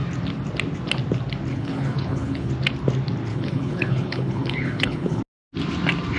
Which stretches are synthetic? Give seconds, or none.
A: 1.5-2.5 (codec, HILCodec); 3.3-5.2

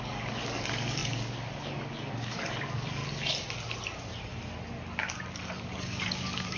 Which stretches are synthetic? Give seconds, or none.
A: 0.0-3.0 (codec, DAC); 5.1-6.6

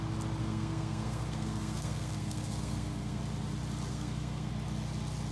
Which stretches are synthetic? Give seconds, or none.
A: 0.4-3.2 (codec, SNAC); 3.9-4.5

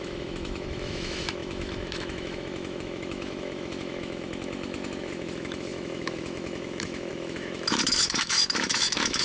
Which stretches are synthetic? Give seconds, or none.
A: 0.0-9.2 (autoencoder, DAC-VAE)

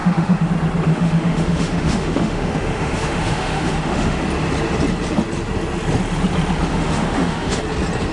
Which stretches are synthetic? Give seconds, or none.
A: 0.0-0.5 (autoencoder, DAC-VAE); 0.9-4.2; 6.7-7.6